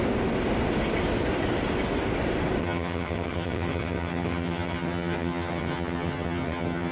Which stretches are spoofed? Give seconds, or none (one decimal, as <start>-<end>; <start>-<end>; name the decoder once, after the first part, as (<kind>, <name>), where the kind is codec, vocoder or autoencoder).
2.6-6.9 (vocoder, HiFi-GAN)